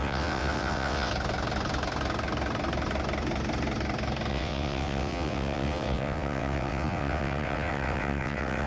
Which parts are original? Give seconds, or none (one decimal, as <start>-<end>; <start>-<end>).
1.1-4.3